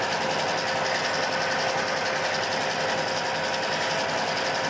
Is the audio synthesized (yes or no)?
no